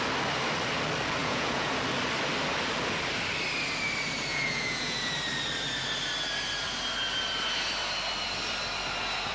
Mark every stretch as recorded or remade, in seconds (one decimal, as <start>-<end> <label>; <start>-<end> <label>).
0.0-1.2 recorded; 1.2-1.7 remade; 1.7-4.3 recorded; 4.3-5.1 remade; 5.1-9.3 recorded